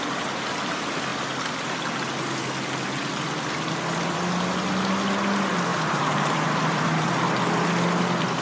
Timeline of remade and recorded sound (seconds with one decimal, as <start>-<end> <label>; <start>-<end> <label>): 0.0-5.7 recorded; 5.7-7.1 remade; 7.1-8.4 recorded